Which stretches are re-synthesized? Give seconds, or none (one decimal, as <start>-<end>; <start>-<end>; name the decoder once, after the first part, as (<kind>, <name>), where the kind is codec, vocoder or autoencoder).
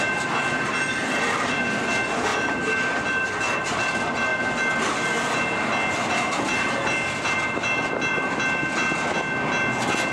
none